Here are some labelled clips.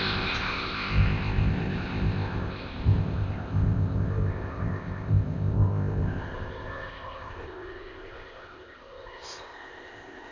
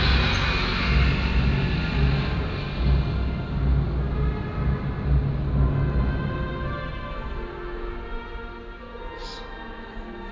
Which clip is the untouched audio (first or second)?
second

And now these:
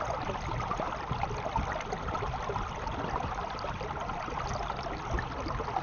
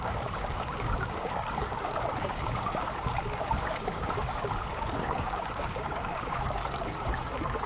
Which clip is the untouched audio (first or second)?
first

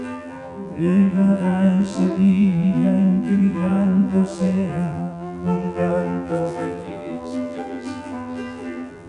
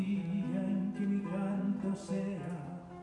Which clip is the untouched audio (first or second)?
second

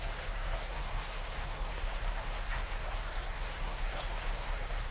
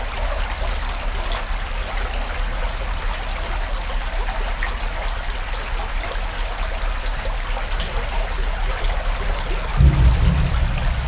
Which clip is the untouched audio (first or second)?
second